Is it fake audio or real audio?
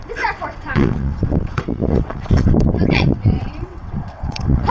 fake